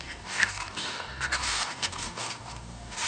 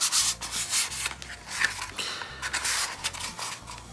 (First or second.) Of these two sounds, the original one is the second